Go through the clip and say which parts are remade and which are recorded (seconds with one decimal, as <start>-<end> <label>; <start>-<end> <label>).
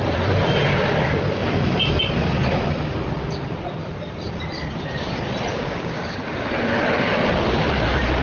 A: 0.0-5.5 recorded; 5.5-6.5 remade; 6.5-8.2 recorded